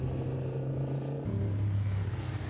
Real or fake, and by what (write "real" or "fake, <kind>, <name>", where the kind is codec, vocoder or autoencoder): real